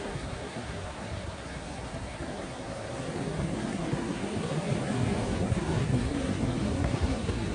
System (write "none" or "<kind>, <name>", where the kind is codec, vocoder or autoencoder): codec, SNAC